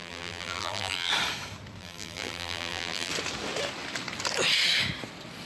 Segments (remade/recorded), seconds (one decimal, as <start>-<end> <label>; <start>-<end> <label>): 0.0-1.1 remade; 1.1-1.8 recorded; 1.8-3.1 remade; 3.1-5.5 recorded